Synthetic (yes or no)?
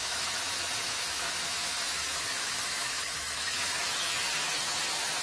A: yes